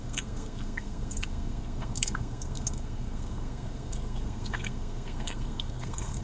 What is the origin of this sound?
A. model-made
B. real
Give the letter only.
A